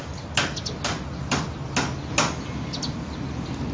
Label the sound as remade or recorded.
recorded